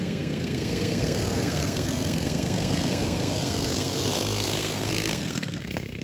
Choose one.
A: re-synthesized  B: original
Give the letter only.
A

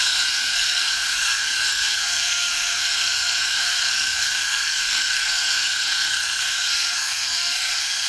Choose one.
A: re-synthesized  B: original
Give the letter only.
A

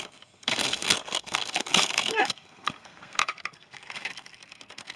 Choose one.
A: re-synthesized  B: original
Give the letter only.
A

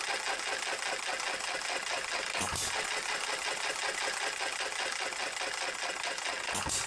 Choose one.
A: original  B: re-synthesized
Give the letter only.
A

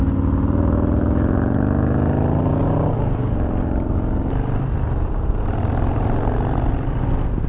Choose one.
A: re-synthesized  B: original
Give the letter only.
B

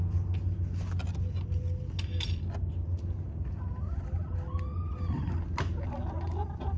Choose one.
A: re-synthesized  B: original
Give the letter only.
B